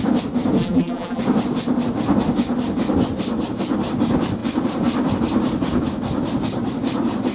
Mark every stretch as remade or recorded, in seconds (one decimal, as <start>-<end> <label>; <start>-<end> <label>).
0.0-0.6 recorded; 0.6-1.2 remade; 1.2-7.3 recorded